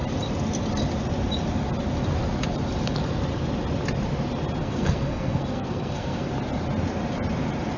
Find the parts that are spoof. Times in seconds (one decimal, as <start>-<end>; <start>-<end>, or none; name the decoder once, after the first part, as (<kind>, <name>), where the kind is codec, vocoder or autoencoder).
4.6-6.3 (codec, SNAC)